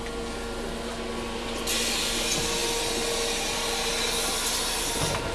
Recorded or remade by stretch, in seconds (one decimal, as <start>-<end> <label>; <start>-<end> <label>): 0.0-5.3 recorded